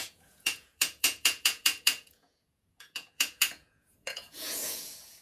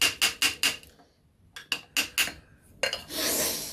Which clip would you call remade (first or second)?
first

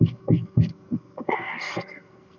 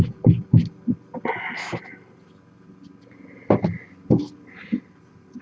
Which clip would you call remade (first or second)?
first